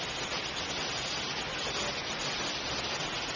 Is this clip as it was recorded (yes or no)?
yes